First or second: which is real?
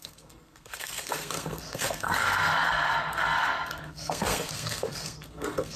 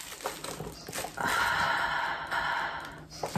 second